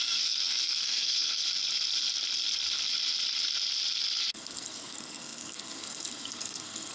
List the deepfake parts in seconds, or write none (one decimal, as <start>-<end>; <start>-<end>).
0.0-1.4; 4.3-6.9